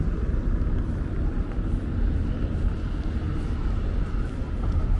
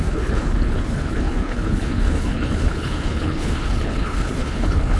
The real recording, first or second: first